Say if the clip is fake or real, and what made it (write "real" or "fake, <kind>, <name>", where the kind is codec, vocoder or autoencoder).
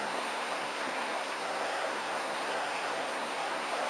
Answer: fake, codec, SNAC